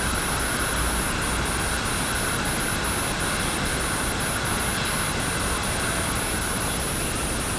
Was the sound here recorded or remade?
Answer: recorded